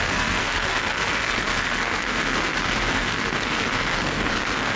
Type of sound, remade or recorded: remade